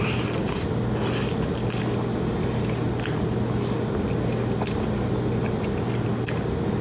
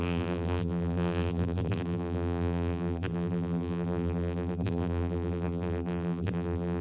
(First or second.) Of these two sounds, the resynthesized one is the second